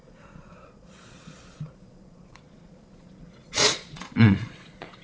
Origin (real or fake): fake